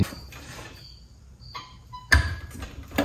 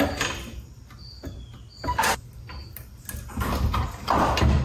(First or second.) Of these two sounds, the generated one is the first